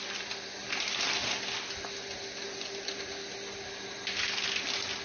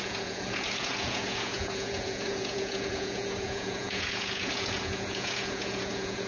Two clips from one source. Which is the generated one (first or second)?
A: second